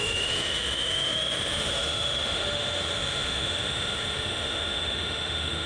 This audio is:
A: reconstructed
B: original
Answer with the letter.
A